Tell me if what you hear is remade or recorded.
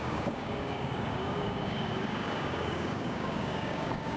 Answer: remade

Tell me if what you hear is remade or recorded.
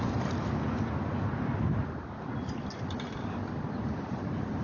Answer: recorded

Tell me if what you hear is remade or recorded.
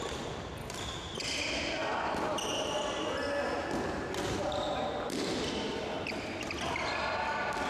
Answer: recorded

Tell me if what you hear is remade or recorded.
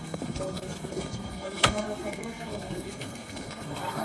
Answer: remade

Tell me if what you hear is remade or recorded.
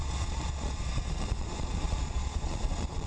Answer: remade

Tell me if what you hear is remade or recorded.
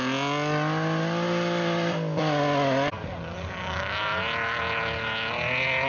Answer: recorded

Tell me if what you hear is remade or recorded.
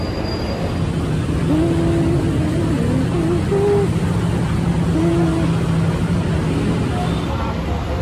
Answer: recorded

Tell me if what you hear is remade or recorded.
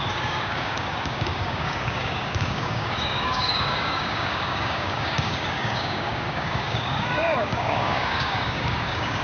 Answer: remade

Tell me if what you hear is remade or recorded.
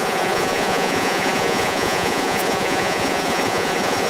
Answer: remade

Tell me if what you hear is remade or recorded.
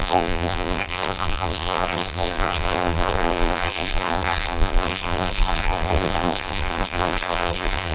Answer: remade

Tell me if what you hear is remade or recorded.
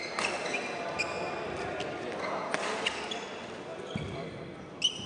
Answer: recorded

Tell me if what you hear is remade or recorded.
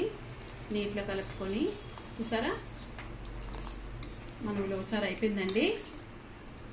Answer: recorded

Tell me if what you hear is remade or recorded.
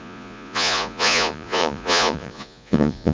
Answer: remade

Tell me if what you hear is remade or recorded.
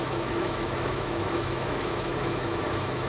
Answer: remade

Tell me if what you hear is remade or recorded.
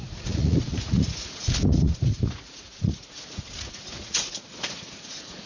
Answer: remade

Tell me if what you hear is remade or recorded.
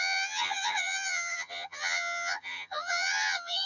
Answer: remade